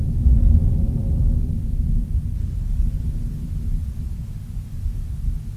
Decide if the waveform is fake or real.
real